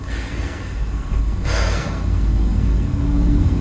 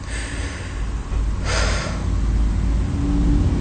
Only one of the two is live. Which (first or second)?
second